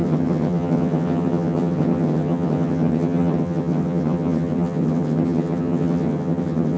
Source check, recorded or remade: remade